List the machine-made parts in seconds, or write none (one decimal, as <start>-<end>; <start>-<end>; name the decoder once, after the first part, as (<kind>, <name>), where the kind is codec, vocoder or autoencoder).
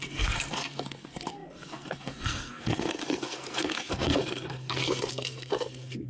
0.0-6.1 (codec, SNAC)